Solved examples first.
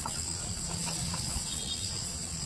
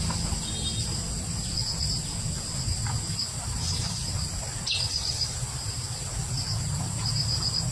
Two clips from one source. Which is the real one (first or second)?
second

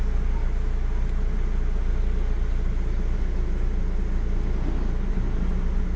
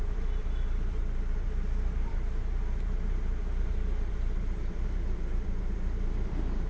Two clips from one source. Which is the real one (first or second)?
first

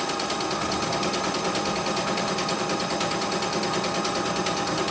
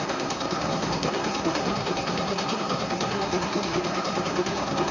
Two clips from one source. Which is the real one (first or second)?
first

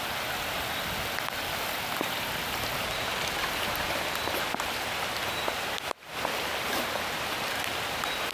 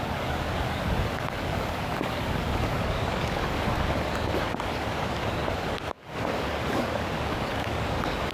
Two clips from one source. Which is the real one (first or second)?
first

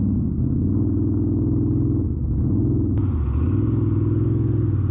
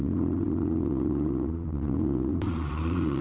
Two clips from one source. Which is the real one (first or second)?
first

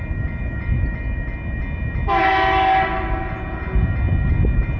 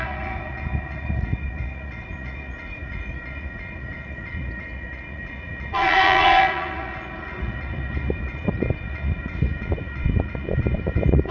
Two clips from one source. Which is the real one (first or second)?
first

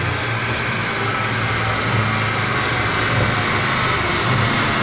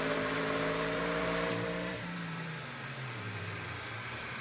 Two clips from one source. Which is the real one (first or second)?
first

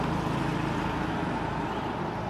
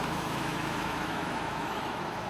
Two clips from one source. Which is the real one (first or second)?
first